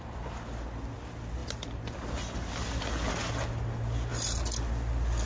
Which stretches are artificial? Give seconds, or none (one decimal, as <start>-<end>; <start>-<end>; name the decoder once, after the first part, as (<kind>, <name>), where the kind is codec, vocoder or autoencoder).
none